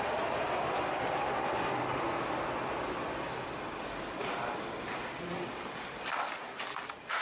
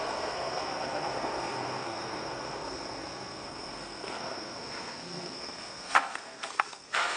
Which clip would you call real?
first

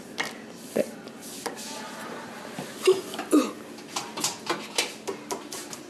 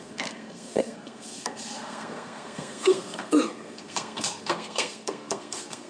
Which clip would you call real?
first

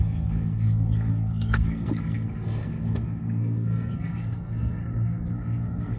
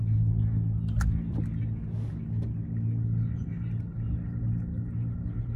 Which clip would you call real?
second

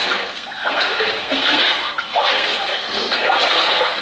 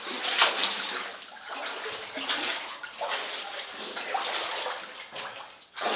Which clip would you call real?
second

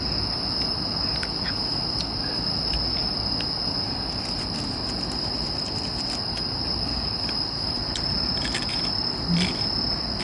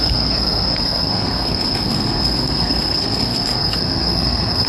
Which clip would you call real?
first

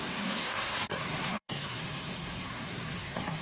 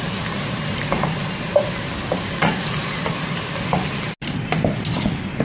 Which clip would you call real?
second